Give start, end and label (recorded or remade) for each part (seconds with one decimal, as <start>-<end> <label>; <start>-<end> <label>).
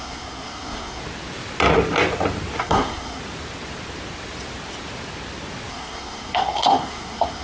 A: 0.0-1.0 remade; 1.0-2.6 recorded; 2.6-3.2 remade; 3.2-5.7 recorded; 5.7-7.4 remade